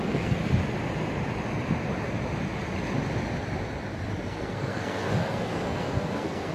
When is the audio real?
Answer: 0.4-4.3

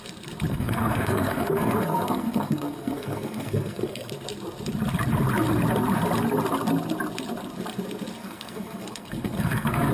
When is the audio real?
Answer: 0.0-0.5; 4.1-8.2

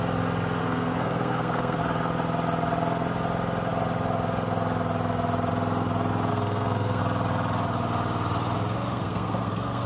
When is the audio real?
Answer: 0.0-0.6; 1.8-6.3; 7.0-8.9

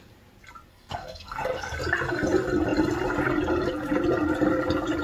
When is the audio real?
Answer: 0.0-0.7; 1.7-5.0

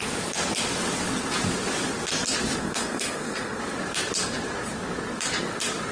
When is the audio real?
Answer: 0.0-2.6; 3.6-5.9

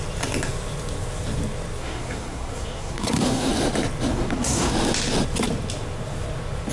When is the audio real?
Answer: 0.0-1.8; 3.5-4.1; 4.7-6.7